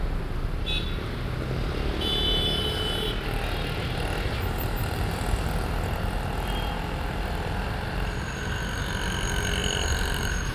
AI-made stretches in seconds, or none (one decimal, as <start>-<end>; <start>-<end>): none